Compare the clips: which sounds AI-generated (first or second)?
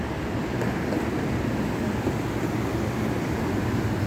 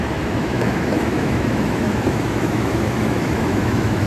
second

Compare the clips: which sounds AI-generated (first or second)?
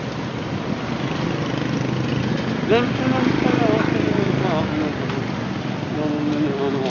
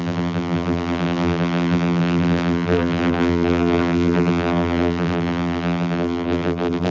second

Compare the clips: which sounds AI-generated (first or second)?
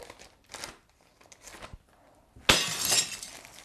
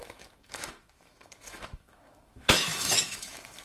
second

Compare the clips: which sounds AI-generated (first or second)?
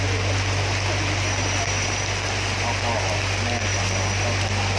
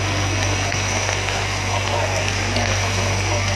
second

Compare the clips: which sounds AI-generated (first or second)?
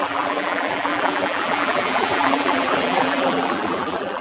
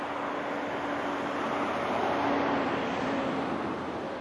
first